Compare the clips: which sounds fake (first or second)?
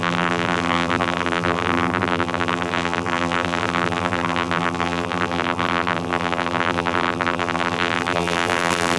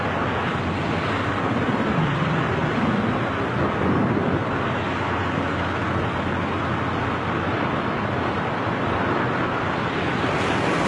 first